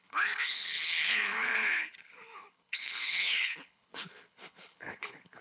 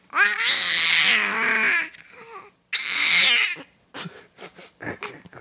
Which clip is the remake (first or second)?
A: first